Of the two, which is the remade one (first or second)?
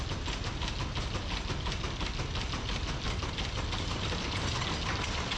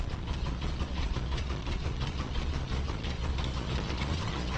second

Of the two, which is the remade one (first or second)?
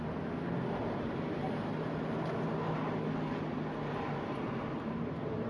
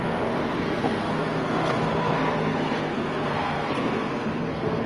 second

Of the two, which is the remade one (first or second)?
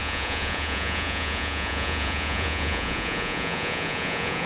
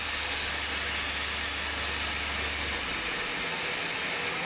first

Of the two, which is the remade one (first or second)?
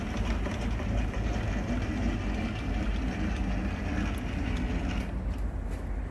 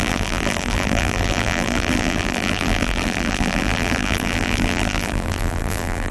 second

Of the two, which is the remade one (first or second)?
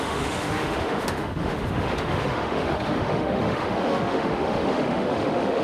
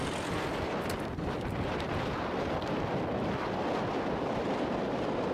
first